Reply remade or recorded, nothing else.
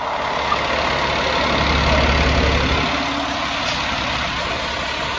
recorded